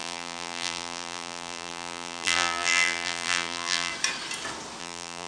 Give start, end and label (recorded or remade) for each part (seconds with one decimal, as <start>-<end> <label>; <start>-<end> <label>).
0.0-3.9 remade; 3.9-4.8 recorded; 4.8-5.3 remade

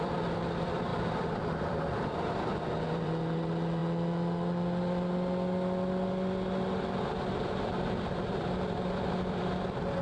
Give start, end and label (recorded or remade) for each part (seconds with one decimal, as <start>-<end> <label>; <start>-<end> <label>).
0.0-0.9 remade; 0.9-1.5 recorded; 1.5-3.8 remade; 3.8-7.2 recorded; 7.2-10.0 remade

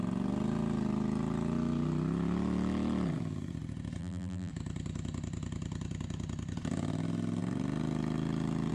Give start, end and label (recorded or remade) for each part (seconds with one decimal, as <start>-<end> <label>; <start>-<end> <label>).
0.0-4.0 recorded; 4.0-4.5 remade; 4.5-8.7 recorded

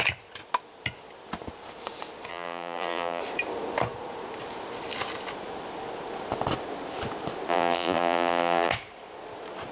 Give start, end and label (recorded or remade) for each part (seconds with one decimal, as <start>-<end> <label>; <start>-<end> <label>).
0.0-2.3 recorded; 2.3-3.2 remade; 3.2-7.5 recorded; 7.5-8.7 remade; 8.7-9.7 recorded

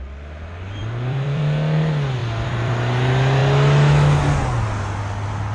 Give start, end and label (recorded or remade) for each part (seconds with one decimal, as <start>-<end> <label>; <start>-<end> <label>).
0.0-0.8 recorded; 0.8-1.4 remade; 1.4-2.2 recorded; 2.2-2.7 remade; 2.7-5.5 recorded

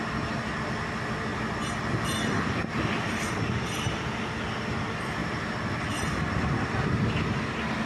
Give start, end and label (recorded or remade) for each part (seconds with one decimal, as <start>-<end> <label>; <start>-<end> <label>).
0.0-1.9 recorded; 1.9-4.0 remade; 4.0-7.9 recorded

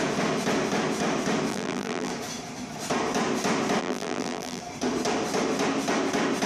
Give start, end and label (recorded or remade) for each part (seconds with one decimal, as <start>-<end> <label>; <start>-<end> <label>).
0.0-1.5 recorded; 1.5-2.1 remade; 2.1-3.8 recorded; 3.8-4.6 remade; 4.6-6.5 recorded